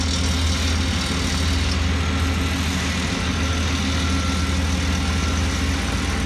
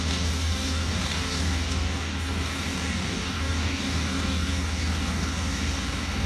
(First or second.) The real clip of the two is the first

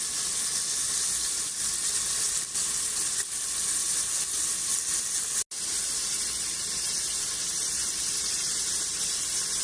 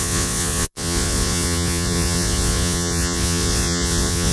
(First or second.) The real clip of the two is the first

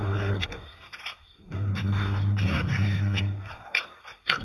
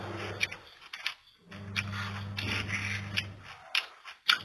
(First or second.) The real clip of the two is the second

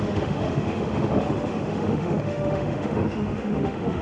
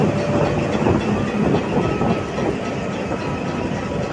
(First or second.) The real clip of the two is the second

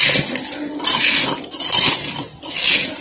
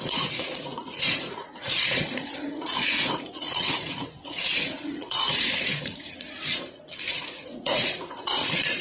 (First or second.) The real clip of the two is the first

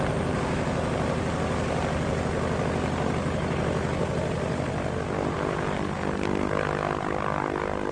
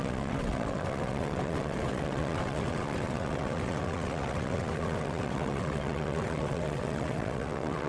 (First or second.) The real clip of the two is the first